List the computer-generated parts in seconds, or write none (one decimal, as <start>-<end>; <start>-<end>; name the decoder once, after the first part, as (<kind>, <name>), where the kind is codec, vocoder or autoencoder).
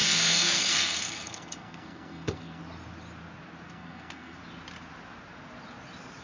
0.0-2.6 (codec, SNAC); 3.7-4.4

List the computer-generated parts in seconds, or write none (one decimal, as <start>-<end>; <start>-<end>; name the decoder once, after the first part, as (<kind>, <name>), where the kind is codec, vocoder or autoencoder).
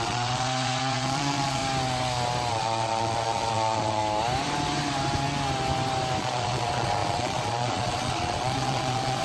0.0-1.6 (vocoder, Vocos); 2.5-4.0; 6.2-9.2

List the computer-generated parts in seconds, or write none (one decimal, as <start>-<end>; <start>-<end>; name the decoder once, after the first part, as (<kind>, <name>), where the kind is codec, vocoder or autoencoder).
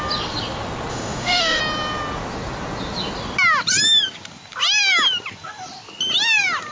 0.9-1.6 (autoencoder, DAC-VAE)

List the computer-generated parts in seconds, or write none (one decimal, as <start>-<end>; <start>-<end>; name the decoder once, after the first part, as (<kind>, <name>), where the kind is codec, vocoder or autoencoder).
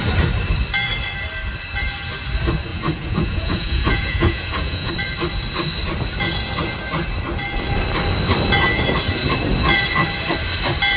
2.7-4.9 (vocoder, Vocos)